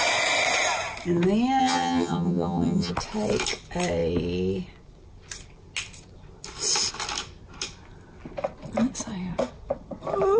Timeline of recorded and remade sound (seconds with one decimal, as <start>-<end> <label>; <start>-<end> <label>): 0.0-1.6 recorded; 1.6-2.9 remade; 2.9-10.4 recorded